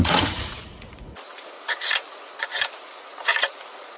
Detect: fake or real fake